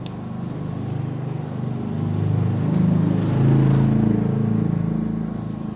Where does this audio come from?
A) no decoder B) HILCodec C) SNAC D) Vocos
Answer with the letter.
A